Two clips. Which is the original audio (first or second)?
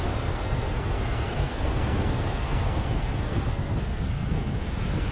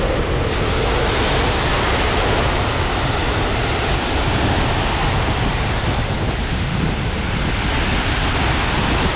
second